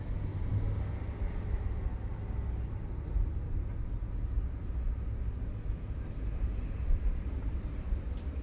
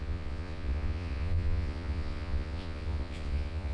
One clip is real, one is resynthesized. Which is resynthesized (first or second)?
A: second